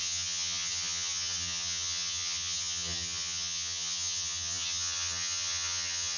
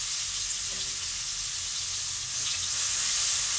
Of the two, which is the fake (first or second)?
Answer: first